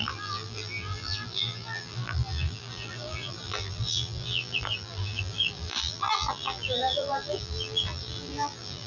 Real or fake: fake